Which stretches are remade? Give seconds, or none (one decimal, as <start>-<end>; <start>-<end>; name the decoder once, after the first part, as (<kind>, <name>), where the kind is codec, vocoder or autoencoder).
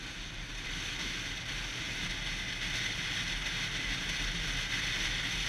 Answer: none